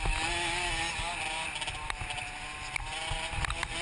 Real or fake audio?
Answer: real